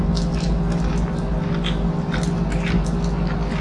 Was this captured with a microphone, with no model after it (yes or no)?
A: yes